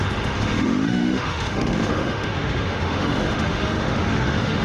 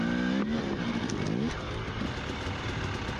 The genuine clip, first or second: second